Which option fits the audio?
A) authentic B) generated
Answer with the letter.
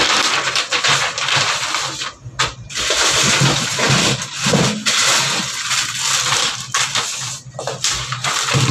A